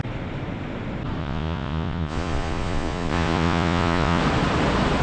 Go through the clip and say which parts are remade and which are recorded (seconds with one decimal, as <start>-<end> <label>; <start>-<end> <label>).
0.0-1.2 recorded; 1.2-4.2 remade; 4.2-5.0 recorded